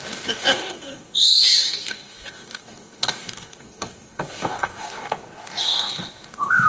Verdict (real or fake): fake